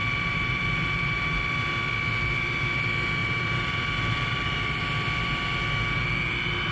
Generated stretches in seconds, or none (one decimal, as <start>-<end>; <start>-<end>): 0.0-1.4; 3.2-4.8

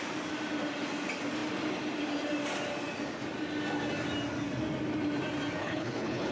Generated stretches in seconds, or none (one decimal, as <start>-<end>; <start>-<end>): 5.6-6.3

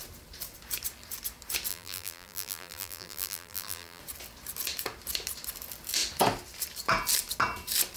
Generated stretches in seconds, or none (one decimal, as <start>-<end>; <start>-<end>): 1.7-4.0